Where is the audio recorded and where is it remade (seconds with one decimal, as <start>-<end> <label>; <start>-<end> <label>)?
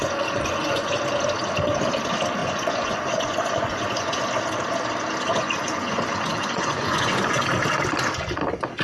0.0-0.9 remade; 0.9-2.4 recorded; 2.4-4.2 remade; 4.2-5.3 recorded; 5.3-7.4 remade; 7.4-8.8 recorded